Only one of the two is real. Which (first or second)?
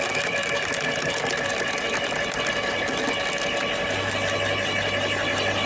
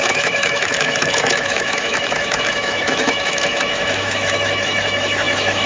first